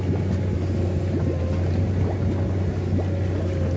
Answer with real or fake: real